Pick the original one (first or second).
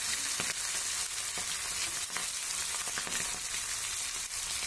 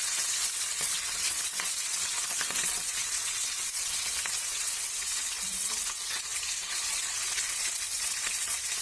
first